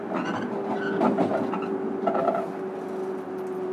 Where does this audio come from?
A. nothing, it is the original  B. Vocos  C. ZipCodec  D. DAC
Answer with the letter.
A